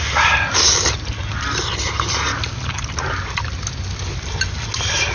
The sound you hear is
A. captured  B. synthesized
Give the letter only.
A